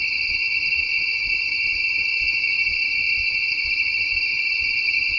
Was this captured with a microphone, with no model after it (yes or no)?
no